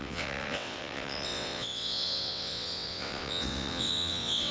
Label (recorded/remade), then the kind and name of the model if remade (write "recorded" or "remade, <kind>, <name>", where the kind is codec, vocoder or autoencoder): remade, vocoder, WaveNeXt